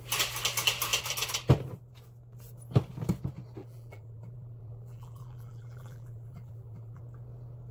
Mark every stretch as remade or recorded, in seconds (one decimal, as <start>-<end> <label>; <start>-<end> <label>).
0.0-3.6 recorded; 3.6-7.0 remade; 7.0-7.7 recorded